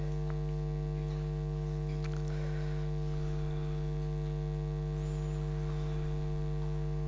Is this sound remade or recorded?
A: recorded